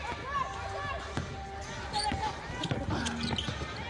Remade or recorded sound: recorded